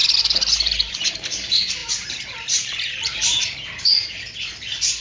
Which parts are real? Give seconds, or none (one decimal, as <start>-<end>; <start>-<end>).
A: 0.0-0.9